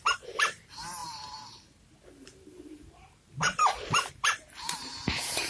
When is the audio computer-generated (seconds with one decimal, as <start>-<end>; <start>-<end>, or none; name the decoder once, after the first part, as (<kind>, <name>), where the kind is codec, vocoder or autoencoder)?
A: 0.0-5.5 (vocoder, BigVGAN v2)